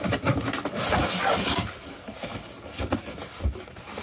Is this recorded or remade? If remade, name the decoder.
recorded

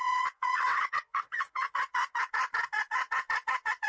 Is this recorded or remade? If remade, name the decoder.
remade, vocoder, WaveNeXt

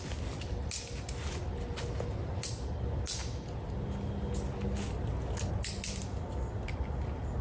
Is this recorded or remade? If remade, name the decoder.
recorded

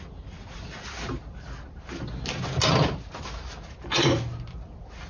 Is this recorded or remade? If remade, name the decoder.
recorded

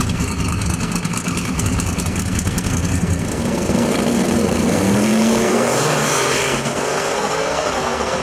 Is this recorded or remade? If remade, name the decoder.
remade, codec, SNAC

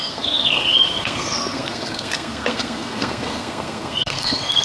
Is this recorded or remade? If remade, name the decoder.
remade, codec, SNAC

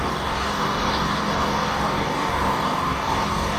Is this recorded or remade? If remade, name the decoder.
remade, codec, DAC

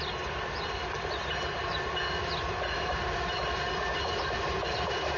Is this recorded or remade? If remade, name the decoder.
recorded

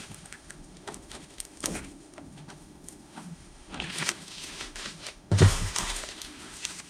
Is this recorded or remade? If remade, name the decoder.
remade, autoencoder, DAC-VAE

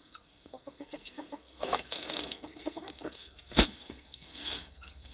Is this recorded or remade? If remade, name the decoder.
remade, codec, SNAC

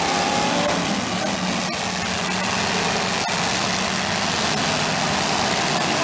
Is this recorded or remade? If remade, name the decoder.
recorded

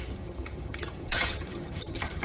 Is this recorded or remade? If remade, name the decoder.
remade, vocoder, HiFi-GAN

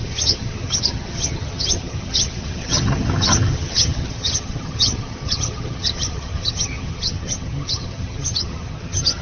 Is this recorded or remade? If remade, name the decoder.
remade, vocoder, HiFi-GAN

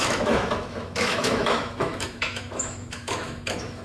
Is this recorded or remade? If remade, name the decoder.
remade, autoencoder, DAC-VAE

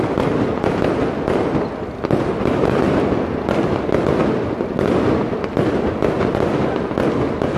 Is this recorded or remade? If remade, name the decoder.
recorded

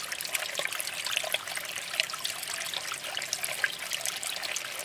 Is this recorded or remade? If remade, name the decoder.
recorded